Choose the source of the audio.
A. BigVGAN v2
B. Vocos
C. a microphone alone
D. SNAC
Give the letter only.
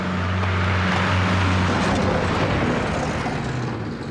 C